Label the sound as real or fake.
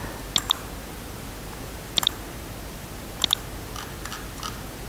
real